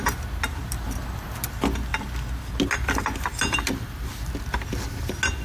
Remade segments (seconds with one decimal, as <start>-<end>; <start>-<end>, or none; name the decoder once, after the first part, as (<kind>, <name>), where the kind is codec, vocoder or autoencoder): none